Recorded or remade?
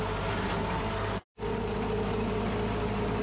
recorded